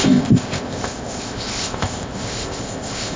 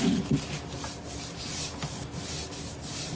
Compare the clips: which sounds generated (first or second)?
first